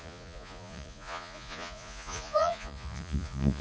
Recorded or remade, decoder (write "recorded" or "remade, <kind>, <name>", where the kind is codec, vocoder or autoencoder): remade, vocoder, Vocos